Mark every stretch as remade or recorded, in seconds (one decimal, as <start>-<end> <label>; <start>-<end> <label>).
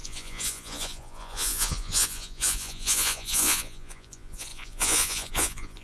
0.0-5.8 remade